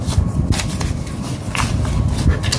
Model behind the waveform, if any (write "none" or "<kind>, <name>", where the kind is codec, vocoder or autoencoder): none